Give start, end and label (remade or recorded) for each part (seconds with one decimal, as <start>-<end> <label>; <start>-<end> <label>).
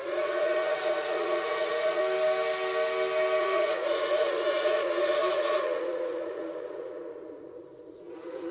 0.0-2.0 remade; 2.0-3.4 recorded; 3.4-8.5 remade